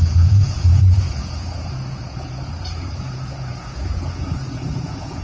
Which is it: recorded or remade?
remade